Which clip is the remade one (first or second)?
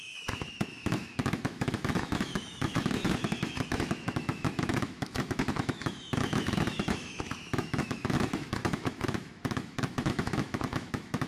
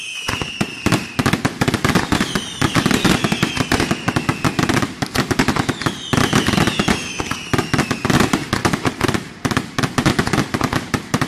first